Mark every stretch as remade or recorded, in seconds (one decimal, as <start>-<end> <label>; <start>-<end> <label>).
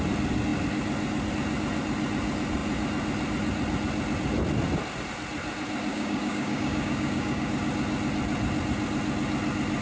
0.0-5.9 recorded; 5.9-7.5 remade; 7.5-9.8 recorded